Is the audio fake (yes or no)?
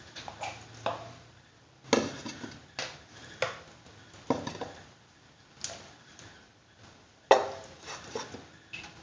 no